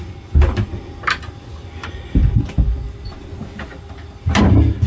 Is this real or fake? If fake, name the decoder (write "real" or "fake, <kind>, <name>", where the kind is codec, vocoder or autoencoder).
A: real